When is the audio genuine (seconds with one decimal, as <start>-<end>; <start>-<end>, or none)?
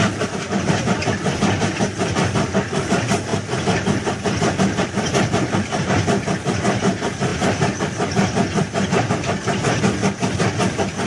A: 0.0-11.1